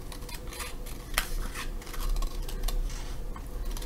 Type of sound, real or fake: real